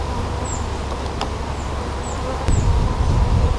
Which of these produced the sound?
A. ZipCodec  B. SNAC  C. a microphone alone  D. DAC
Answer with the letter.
C